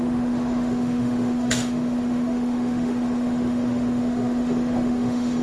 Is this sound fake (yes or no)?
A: yes